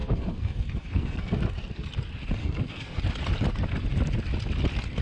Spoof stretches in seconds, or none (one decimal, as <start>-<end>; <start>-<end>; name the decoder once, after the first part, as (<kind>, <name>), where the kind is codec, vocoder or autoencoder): 0.0-1.9 (codec, SNAC); 2.4-3.0